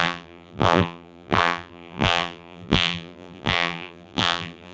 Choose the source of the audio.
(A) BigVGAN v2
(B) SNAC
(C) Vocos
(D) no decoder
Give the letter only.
A